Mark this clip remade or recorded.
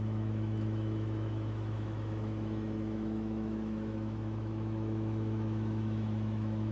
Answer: remade